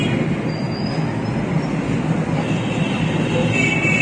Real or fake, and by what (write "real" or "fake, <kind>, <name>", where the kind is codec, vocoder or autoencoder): real